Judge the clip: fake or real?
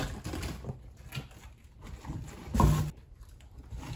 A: real